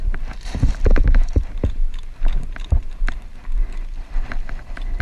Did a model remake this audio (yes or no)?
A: yes